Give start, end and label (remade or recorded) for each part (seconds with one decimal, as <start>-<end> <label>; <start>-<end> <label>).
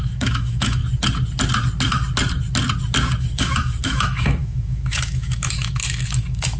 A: 0.0-0.8 remade; 0.8-3.2 recorded; 3.2-6.6 remade